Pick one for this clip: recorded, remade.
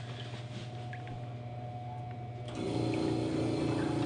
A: recorded